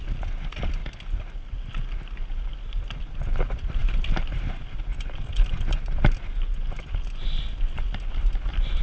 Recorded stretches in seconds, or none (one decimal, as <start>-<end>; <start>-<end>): 0.0-8.8